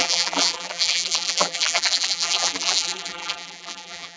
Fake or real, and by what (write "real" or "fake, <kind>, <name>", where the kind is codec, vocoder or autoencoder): fake, vocoder, BigVGAN v2